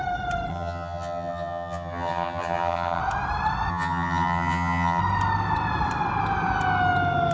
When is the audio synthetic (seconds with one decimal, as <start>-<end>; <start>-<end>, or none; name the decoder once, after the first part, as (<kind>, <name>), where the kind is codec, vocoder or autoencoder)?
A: 0.5-3.0 (vocoder, HiFi-GAN); 3.7-5.0